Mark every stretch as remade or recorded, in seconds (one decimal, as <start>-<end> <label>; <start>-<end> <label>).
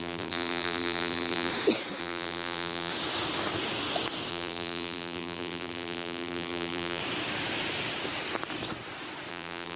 0.0-1.5 remade; 1.5-2.0 recorded; 2.0-2.9 remade; 2.9-4.3 recorded; 4.3-7.0 remade; 7.0-9.3 recorded; 9.3-9.8 remade